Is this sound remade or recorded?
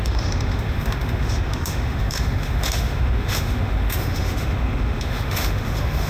remade